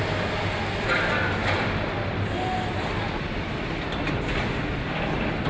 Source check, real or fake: real